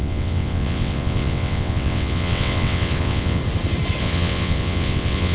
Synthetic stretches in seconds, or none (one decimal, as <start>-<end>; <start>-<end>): 0.0-3.4; 4.0-5.3